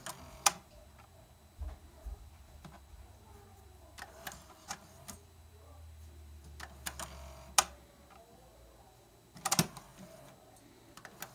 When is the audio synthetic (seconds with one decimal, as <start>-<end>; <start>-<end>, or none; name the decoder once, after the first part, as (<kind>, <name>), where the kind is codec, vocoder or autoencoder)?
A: none